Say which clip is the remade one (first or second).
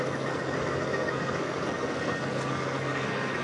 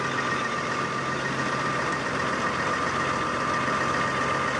first